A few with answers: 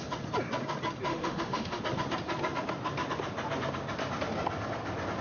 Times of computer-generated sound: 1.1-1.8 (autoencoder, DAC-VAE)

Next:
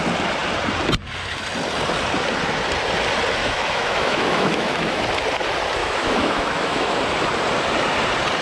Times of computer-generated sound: 3.4-5.0 (autoencoder, DAC-VAE); 5.8-7.0